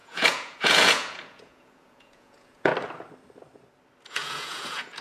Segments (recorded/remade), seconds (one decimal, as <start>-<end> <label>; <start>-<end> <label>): 0.0-2.7 remade; 2.7-4.1 recorded; 4.1-5.0 remade